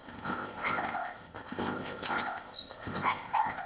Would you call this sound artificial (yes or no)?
yes